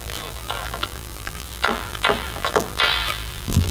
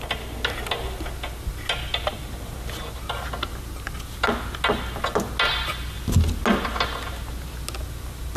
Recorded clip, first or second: second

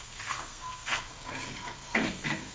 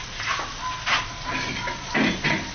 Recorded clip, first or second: second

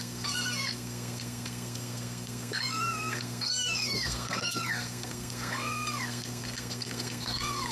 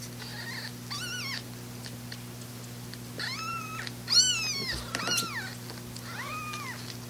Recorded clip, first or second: second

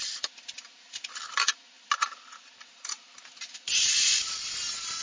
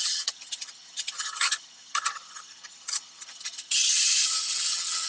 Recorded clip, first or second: first